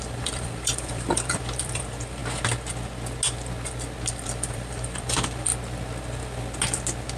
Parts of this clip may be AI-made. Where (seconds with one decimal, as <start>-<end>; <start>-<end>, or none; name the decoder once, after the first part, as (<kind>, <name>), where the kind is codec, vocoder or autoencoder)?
0.0-2.2 (vocoder, BigVGAN v2); 4.1-5.5